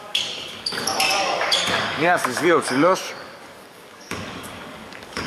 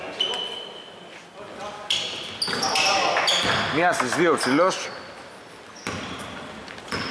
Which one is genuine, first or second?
second